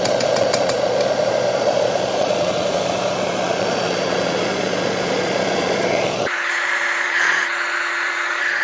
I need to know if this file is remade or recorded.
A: remade